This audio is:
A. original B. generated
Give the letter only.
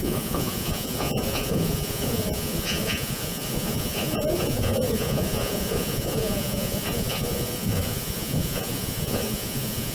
B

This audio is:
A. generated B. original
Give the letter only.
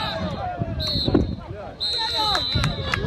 A